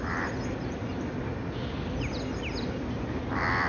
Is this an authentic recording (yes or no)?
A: yes